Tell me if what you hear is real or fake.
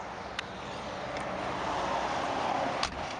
real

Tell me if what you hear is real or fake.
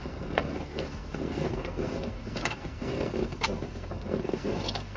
fake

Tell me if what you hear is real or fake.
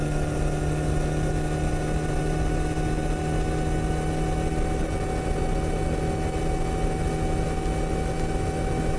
real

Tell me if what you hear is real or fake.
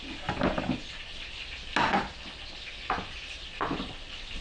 real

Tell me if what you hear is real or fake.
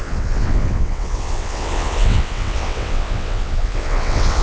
fake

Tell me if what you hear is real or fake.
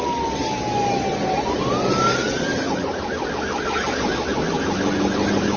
real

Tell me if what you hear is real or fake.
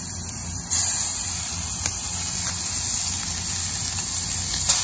real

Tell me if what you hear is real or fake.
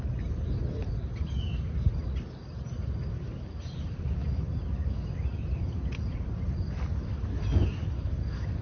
real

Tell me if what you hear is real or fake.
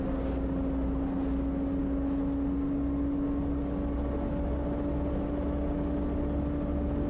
real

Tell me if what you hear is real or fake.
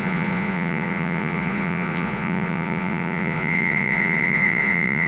fake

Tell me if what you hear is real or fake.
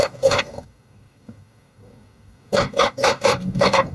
fake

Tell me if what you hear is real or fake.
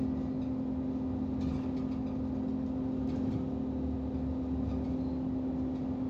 real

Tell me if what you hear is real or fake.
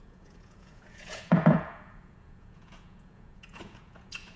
fake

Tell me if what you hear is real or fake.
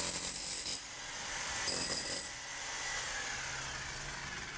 real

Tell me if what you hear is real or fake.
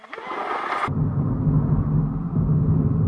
real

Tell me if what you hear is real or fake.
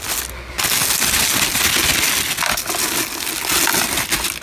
real